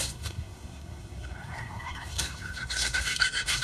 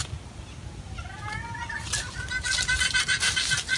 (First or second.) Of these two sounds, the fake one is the first